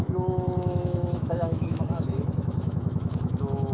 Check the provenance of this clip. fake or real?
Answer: fake